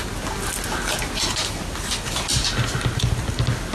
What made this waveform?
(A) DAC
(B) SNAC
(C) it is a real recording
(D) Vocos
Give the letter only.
C